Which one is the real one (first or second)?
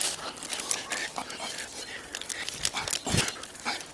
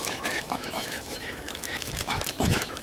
first